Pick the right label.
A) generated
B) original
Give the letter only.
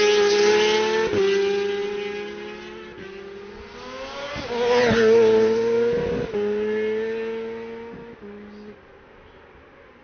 B